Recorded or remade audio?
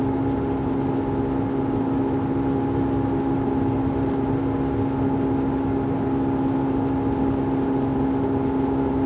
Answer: recorded